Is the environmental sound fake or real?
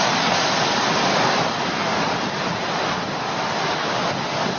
real